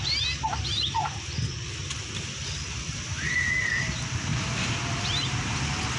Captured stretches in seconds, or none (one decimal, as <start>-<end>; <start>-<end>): 3.6-4.3; 5.0-6.0